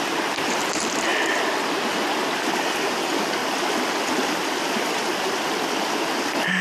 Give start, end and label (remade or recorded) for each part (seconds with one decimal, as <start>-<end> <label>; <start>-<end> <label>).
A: 0.0-6.6 recorded